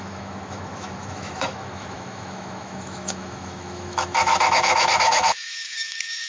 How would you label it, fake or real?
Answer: fake